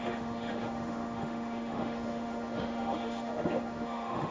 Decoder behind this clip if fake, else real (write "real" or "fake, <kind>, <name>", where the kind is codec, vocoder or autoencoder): fake, autoencoder, DAC-VAE